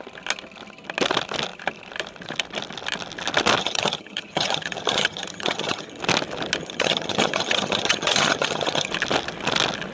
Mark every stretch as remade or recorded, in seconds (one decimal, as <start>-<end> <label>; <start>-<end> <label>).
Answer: 0.0-3.6 recorded; 3.6-6.0 remade; 6.0-6.6 recorded; 6.6-8.9 remade; 8.9-9.9 recorded